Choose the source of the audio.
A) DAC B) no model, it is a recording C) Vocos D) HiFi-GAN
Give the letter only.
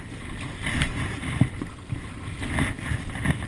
B